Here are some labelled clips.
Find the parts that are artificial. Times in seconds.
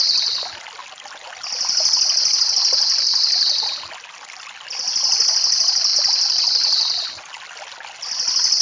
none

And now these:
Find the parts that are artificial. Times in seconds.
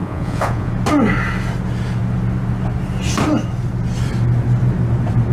0.0-0.7 (vocoder, Vocos)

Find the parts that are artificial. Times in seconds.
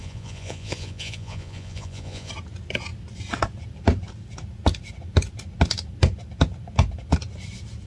0.0-2.3 (vocoder, Vocos)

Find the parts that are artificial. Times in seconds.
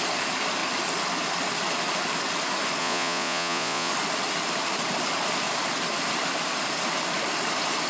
2.8-3.9 (vocoder, Vocos)